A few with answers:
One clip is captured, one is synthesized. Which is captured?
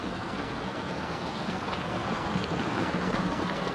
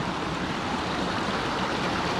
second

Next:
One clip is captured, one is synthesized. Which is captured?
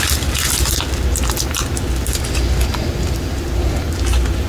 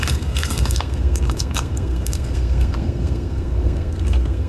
first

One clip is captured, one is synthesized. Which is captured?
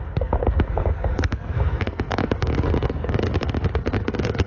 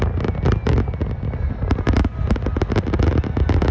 second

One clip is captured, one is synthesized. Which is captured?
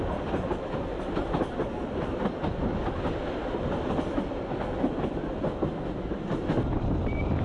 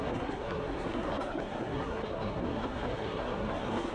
first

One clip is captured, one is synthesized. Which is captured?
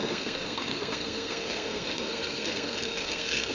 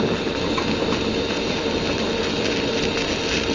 second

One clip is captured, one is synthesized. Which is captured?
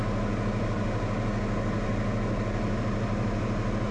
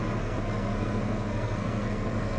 first